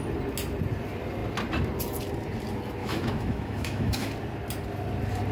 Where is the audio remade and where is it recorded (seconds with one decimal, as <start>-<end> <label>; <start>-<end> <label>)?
0.0-2.8 recorded; 2.8-4.1 remade; 4.1-5.3 recorded